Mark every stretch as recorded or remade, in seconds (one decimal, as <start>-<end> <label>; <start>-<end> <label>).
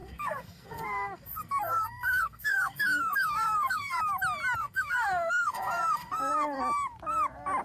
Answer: 0.0-4.0 remade; 4.0-4.6 recorded; 4.6-6.6 remade; 6.6-7.6 recorded